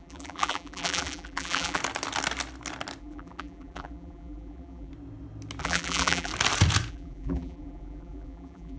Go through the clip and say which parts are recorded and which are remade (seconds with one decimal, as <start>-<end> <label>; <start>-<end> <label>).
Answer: 0.0-1.8 remade; 1.8-3.0 recorded; 3.0-4.9 remade; 4.9-5.6 recorded; 5.6-6.3 remade; 6.3-6.9 recorded; 6.9-8.8 remade